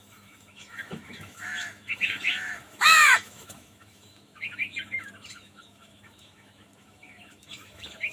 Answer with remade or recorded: remade